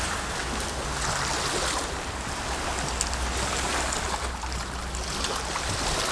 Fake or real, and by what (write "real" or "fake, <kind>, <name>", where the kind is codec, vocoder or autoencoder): real